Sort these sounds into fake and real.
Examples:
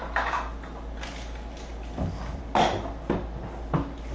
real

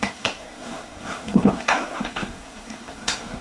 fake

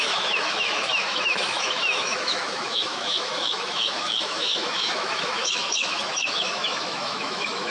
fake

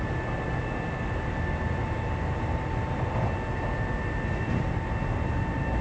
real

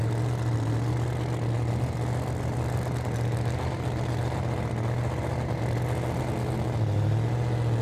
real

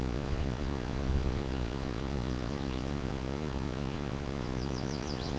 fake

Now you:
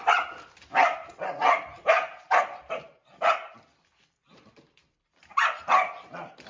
fake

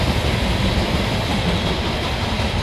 fake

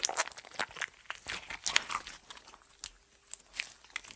real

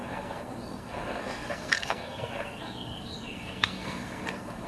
fake